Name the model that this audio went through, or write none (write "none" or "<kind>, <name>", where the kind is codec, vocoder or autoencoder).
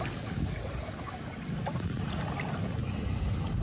none